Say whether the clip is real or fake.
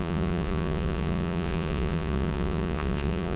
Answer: fake